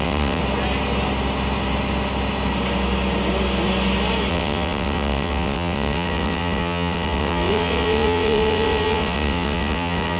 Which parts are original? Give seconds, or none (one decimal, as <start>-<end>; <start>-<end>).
0.4-4.3